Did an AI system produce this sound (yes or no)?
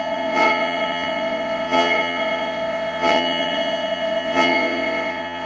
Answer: yes